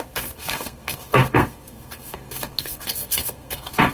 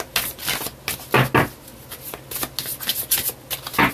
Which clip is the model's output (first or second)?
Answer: first